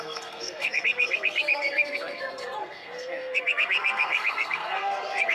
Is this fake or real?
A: fake